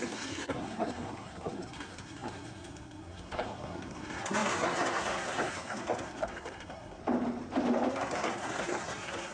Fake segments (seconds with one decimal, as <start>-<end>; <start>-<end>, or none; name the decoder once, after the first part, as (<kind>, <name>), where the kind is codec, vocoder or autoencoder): 0.0-7.0 (codec, SNAC); 7.9-9.3